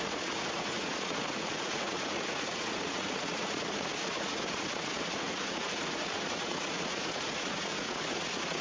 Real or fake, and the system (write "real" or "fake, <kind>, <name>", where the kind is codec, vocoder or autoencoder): fake, vocoder, Vocos